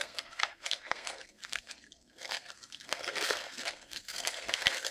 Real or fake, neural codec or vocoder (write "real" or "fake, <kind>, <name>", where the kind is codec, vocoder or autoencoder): fake, codec, SNAC